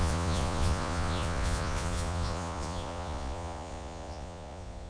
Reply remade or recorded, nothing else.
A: remade